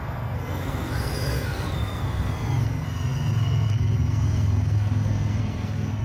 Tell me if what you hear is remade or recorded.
remade